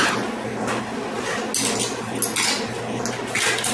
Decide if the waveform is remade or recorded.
recorded